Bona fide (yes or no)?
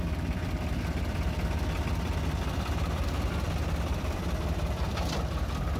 no